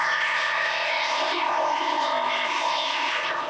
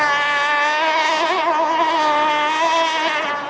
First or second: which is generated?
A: first